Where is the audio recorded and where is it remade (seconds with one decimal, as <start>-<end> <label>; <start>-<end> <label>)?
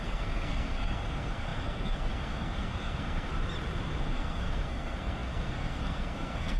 0.0-3.3 remade; 3.3-4.0 recorded; 4.0-6.6 remade